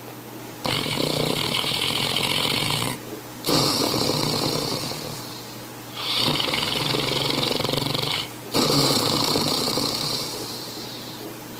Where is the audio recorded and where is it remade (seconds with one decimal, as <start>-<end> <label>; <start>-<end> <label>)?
0.0-8.8 recorded; 8.8-11.6 remade